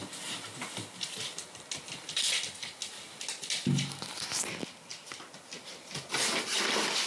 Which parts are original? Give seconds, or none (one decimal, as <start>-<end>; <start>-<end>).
0.0-7.1